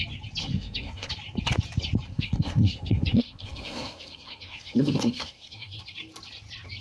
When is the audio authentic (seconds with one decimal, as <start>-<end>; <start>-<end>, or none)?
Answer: 0.0-0.4; 1.1-2.1; 5.8-6.8